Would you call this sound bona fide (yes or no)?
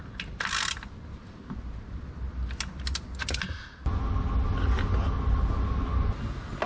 yes